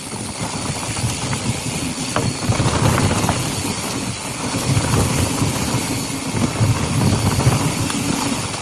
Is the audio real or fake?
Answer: real